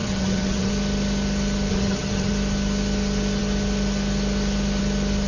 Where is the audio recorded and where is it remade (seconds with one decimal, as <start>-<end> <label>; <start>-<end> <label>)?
0.0-0.7 remade; 0.7-1.7 recorded; 1.7-2.3 remade; 2.3-5.3 recorded